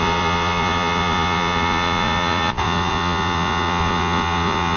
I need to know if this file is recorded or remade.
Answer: remade